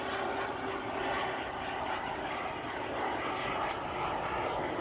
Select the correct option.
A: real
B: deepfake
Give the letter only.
A